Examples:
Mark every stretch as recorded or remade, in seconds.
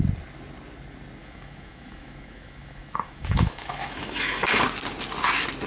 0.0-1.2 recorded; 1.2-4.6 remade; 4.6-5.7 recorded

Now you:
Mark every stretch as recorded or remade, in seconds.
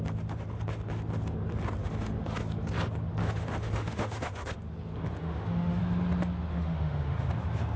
0.0-1.8 recorded; 1.8-2.4 remade; 2.4-3.2 recorded; 3.2-4.6 remade; 4.6-5.2 recorded; 5.2-5.8 remade; 5.8-6.5 recorded; 6.5-7.3 remade; 7.3-7.8 recorded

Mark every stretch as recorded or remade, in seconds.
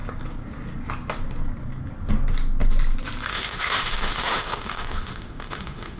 0.0-3.3 recorded; 3.3-6.0 remade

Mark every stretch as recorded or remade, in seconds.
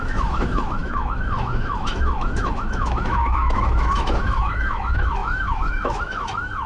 0.0-6.7 remade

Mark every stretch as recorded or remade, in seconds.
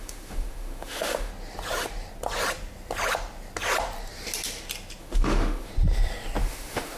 0.0-1.3 remade; 1.3-5.0 recorded; 5.0-5.7 remade; 5.7-6.4 recorded; 6.4-7.0 remade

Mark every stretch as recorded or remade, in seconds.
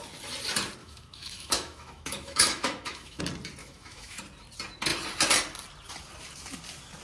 0.0-0.8 recorded; 0.8-3.2 remade; 3.2-3.6 recorded; 3.6-4.2 remade; 4.2-7.0 recorded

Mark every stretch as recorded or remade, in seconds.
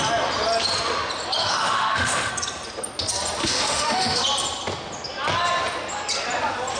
0.0-1.4 recorded; 1.4-2.3 remade; 2.3-3.4 recorded; 3.4-4.2 remade; 4.2-6.8 recorded